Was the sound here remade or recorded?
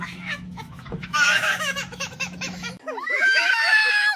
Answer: remade